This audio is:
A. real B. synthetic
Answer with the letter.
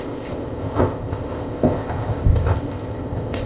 B